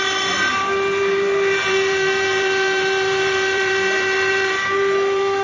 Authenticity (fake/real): fake